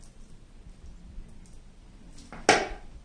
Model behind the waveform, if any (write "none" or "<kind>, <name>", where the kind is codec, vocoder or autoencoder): none